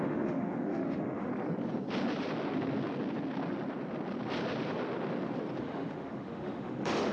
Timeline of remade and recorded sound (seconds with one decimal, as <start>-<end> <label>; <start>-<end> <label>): 0.0-1.3 remade; 1.3-5.6 recorded; 5.6-7.1 remade